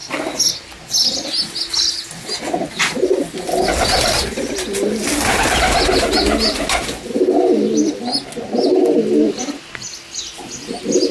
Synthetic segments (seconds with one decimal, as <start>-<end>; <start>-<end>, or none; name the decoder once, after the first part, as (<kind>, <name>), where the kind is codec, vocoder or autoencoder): none